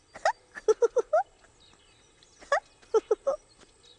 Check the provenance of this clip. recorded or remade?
recorded